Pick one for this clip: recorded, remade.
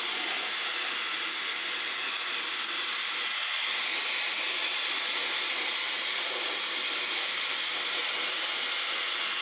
recorded